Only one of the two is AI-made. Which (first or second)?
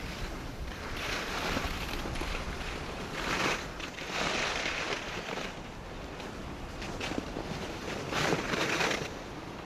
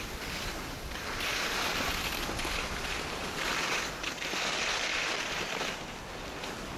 first